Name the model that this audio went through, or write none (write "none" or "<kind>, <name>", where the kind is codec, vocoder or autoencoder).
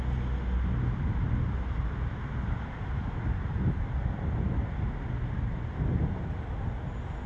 none